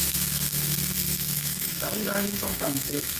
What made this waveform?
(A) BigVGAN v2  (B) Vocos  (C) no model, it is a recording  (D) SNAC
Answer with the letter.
D